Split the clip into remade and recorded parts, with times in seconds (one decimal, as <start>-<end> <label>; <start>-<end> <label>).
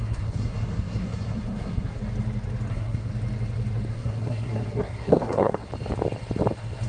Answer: 0.0-2.0 remade; 2.0-2.7 recorded; 2.7-3.1 remade; 3.1-3.9 recorded; 3.9-5.7 remade; 5.7-6.9 recorded